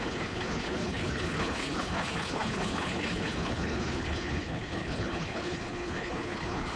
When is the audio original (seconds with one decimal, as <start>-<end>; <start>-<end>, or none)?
none